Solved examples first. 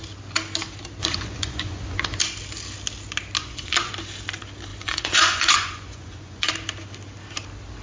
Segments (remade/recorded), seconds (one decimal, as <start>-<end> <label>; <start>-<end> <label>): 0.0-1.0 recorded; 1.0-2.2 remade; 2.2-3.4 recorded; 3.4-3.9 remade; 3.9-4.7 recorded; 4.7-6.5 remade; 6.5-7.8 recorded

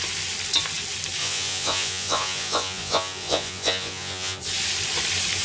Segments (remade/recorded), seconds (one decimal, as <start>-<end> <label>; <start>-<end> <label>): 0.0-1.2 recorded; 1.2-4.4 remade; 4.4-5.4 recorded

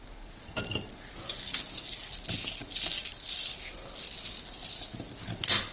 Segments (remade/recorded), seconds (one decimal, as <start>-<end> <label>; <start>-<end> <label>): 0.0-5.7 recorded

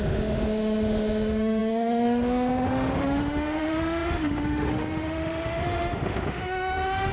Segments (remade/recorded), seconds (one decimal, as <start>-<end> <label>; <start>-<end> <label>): 0.0-7.1 remade

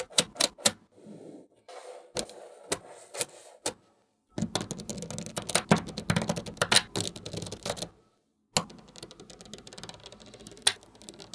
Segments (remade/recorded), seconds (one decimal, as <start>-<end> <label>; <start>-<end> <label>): 0.0-11.3 recorded